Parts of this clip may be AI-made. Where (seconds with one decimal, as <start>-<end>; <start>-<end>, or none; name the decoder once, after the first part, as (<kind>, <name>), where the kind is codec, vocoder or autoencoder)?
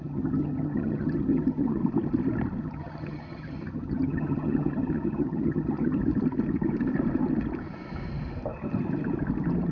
0.0-1.8 (vocoder, HiFi-GAN); 2.6-6.0